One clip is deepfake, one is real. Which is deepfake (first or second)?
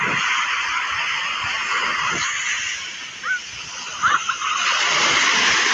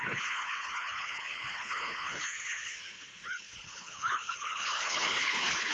second